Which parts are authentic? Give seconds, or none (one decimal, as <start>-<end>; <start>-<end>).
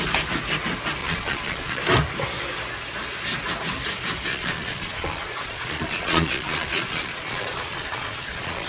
0.0-1.0; 1.8-4.3